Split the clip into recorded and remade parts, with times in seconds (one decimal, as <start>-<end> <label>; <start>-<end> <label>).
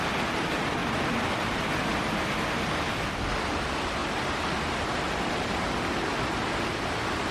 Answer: 0.0-7.3 recorded